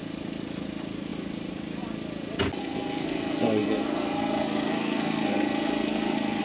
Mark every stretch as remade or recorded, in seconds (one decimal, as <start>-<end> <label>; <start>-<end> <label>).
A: 0.0-2.6 recorded; 2.6-6.4 remade